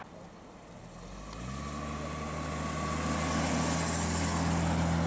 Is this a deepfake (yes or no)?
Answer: no